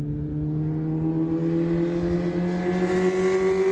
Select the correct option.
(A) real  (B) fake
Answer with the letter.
A